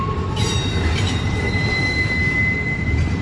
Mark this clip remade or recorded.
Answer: remade